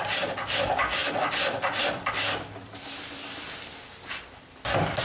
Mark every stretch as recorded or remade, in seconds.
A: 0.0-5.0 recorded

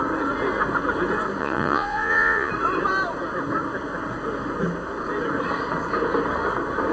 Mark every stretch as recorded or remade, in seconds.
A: 0.0-1.4 recorded; 1.4-2.5 remade; 2.5-6.9 recorded

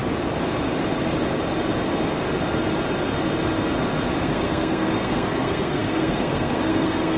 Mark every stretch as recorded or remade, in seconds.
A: 0.0-4.2 recorded; 4.2-7.2 remade

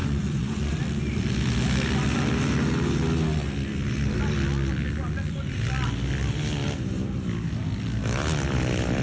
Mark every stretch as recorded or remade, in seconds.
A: 0.0-0.8 remade; 0.8-9.0 recorded

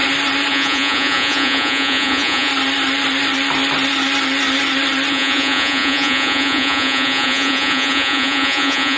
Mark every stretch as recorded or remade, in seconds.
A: 0.0-0.5 recorded; 0.5-2.5 remade; 2.5-5.1 recorded; 5.1-9.0 remade

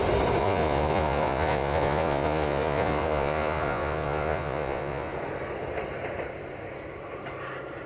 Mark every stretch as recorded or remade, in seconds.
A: 0.0-0.4 recorded; 0.4-5.1 remade; 5.1-7.9 recorded

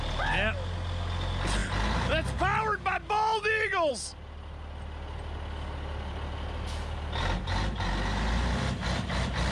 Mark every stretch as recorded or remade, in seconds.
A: 0.0-9.5 recorded